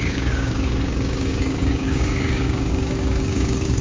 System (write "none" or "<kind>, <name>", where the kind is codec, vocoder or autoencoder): codec, DAC